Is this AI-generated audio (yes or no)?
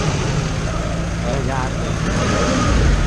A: no